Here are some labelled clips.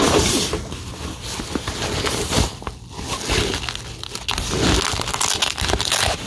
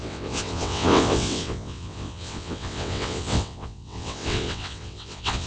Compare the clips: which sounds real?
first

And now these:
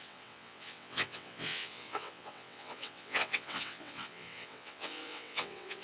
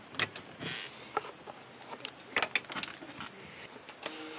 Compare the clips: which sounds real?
second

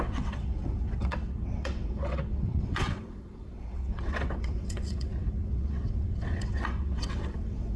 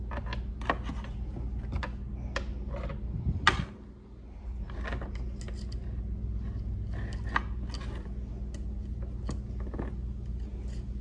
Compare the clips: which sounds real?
second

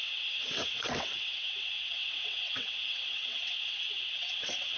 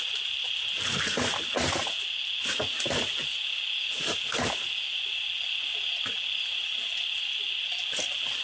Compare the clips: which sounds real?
second